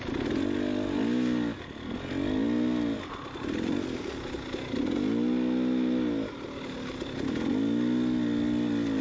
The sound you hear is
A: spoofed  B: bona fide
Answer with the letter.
B